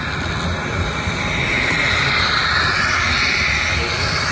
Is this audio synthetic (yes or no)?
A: no